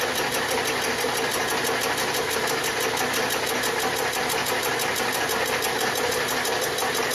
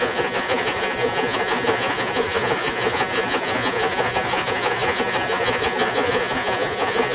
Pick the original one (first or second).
first